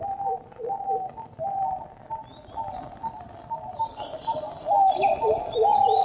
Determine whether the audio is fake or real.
real